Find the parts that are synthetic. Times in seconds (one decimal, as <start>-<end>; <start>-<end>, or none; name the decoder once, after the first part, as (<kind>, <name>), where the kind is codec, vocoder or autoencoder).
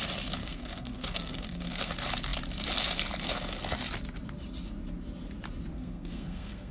0.4-1.9 (codec, SNAC); 5.7-6.7